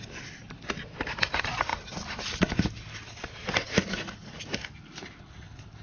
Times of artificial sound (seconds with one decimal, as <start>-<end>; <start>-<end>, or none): none